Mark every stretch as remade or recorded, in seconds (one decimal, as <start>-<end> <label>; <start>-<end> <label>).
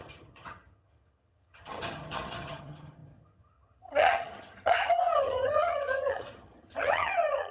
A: 0.0-7.5 remade